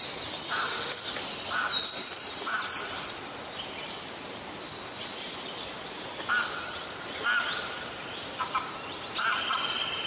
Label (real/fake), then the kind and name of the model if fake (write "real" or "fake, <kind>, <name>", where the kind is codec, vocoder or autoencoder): real